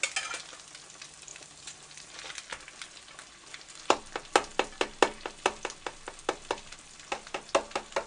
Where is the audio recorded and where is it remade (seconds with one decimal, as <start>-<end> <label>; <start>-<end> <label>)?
0.0-1.3 recorded; 1.3-2.3 remade; 2.3-3.5 recorded; 3.5-4.0 remade; 4.0-8.1 recorded